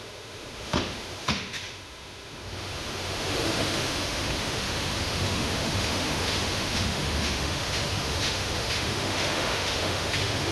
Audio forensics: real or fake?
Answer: fake